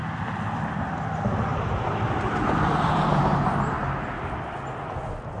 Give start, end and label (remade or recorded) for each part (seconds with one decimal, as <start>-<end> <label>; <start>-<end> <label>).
0.0-1.5 recorded; 1.5-3.1 remade; 3.1-5.4 recorded